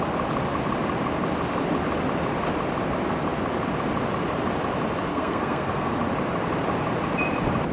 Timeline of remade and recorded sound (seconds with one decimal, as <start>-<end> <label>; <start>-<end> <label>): 0.0-5.1 recorded; 5.1-5.9 remade; 5.9-7.7 recorded